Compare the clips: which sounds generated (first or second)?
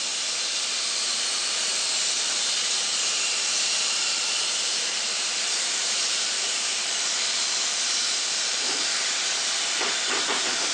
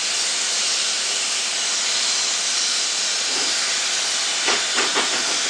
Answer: first